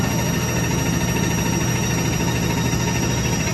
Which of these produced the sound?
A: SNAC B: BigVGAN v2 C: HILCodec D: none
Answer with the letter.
D